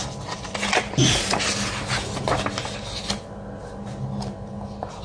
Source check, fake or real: real